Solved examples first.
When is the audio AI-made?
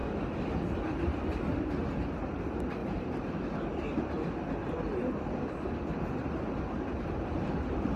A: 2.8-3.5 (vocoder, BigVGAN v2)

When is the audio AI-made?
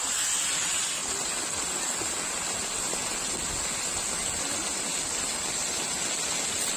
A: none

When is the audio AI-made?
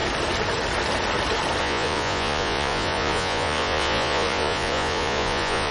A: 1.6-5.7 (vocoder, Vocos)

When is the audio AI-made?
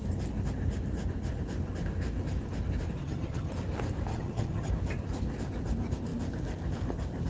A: 3.0-3.5 (vocoder, HiFi-GAN); 4.1-4.7